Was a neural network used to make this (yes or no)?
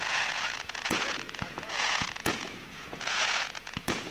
yes